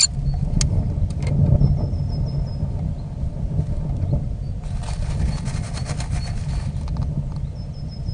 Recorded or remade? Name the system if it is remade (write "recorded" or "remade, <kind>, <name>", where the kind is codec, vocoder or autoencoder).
recorded